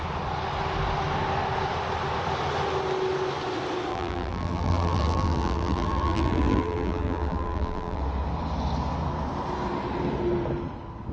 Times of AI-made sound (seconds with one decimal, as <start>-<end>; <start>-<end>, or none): 3.9-8.0